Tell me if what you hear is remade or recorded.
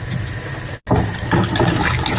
recorded